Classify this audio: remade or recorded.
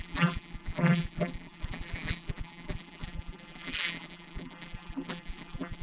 remade